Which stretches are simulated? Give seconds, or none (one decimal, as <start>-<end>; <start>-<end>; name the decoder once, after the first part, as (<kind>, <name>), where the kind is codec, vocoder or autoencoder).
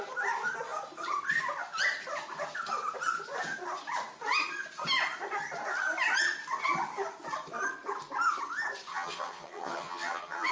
8.9-10.5 (vocoder, HiFi-GAN)